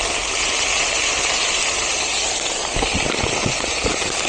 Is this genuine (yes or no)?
yes